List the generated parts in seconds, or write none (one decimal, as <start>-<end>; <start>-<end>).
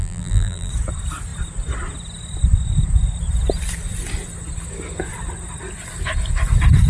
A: 0.0-0.7